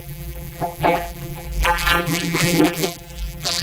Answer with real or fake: fake